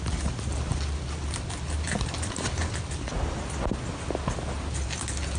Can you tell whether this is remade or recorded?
recorded